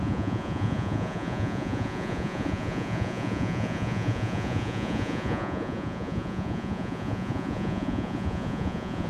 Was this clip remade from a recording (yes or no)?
yes